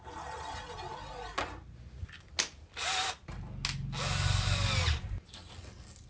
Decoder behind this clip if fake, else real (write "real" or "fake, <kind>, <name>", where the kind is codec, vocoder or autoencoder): real